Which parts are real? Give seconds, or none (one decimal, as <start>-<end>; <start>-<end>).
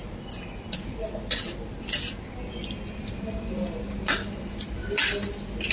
1.1-5.7